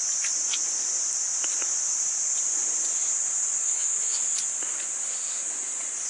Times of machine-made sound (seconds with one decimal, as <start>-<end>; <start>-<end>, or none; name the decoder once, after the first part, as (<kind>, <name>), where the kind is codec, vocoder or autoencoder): 3.6-4.2 (autoencoder, DAC-VAE)